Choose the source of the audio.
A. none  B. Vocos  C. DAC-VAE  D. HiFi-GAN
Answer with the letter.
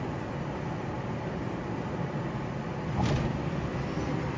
A